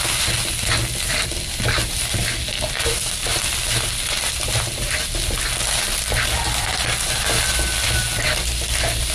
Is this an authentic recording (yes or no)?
yes